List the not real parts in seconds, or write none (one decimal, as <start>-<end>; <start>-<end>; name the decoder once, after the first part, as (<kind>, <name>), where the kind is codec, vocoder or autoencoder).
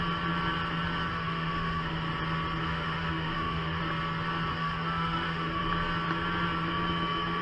1.1-1.9 (autoencoder, DAC-VAE); 2.6-3.8; 4.5-5.6